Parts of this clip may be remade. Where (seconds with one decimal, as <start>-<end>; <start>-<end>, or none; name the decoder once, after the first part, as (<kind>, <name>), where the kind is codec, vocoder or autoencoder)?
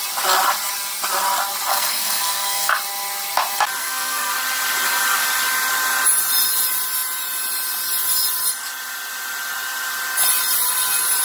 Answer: 1.7-2.7 (codec, SNAC); 3.8-4.3